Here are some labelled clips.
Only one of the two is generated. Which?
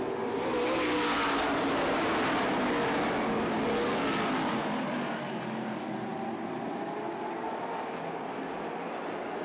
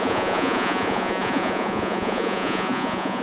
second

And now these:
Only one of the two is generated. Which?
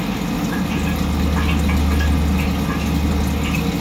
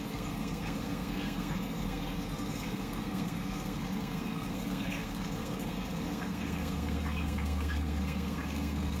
second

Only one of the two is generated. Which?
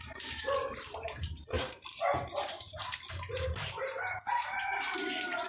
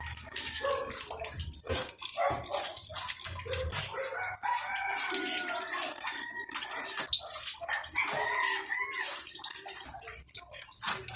first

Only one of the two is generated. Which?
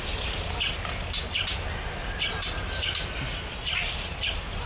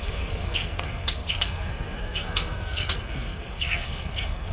second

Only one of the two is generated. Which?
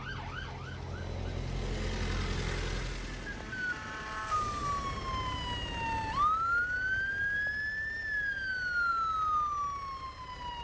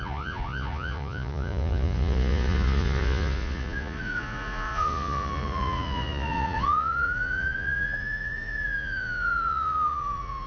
second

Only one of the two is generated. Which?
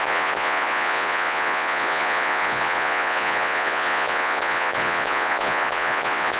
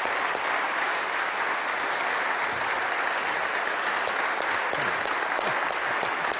first